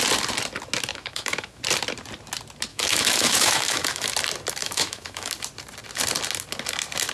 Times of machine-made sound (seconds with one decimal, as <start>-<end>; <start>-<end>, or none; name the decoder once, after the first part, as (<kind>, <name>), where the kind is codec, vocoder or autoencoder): 0.9-1.6 (autoencoder, DAC-VAE); 2.7-4.1; 4.6-5.3